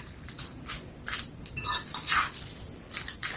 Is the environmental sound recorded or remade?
recorded